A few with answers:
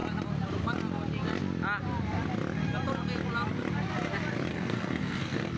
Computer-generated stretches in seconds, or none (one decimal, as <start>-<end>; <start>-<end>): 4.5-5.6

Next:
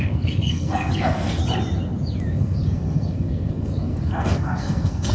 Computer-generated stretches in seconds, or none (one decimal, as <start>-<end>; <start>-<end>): 0.0-1.4; 2.3-5.1

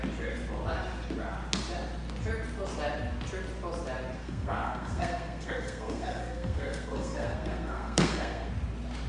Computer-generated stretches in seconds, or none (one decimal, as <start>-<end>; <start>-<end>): 4.2-8.5

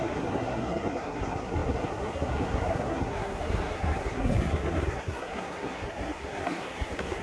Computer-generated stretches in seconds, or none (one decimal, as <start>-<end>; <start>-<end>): 0.0-7.2

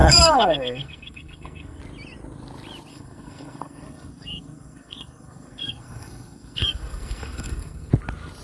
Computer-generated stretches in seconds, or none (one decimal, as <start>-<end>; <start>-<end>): 0.0-1.8; 2.9-7.9

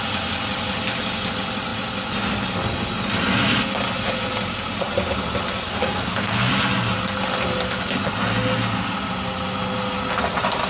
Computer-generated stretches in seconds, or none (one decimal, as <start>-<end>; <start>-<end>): 5.7-6.5

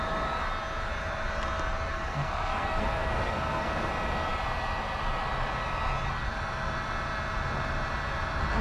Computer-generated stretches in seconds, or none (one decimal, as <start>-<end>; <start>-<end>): 1.9-3.9

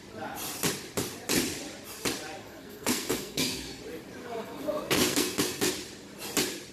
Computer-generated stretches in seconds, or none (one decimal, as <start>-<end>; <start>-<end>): 2.4-3.8; 4.2-5.7